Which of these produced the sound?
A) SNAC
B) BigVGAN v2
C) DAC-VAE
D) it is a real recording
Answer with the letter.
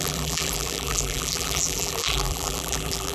B